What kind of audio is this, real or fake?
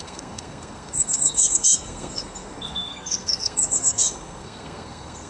fake